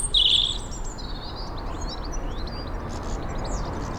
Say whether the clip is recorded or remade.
recorded